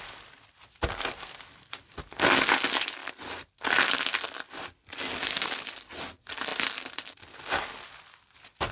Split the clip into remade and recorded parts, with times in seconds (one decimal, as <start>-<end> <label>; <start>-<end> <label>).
0.0-3.0 recorded; 3.0-5.7 remade; 5.7-8.7 recorded